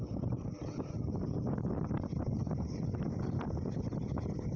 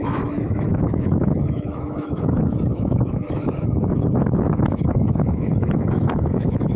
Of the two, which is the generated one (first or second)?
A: second